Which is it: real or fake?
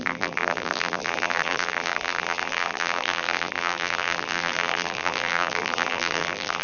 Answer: fake